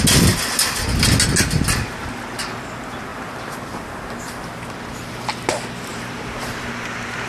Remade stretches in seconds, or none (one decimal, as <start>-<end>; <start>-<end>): 3.1-4.3; 5.9-6.7